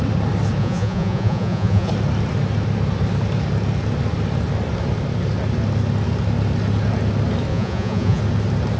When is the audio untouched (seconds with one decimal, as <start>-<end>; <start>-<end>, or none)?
0.0-0.6; 1.9-7.5; 8.2-8.8